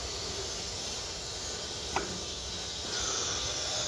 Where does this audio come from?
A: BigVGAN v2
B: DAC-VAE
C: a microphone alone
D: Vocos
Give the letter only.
C